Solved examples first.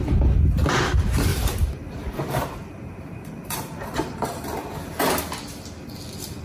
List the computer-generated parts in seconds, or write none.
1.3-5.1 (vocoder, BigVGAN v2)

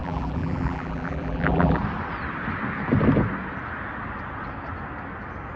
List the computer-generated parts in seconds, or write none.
0.0-1.8 (vocoder, BigVGAN v2)

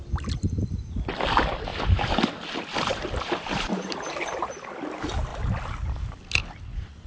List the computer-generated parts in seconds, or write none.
1.7-2.3 (vocoder, BigVGAN v2); 2.9-4.1